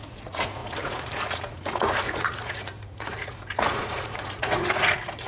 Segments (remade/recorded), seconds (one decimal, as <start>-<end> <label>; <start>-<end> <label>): 0.0-5.3 remade